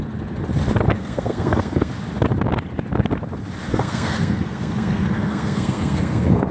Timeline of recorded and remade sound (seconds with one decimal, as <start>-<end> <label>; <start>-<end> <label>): 0.0-1.0 recorded; 1.0-1.9 remade; 1.9-3.7 recorded; 3.7-6.5 remade